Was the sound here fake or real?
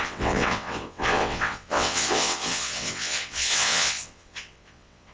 fake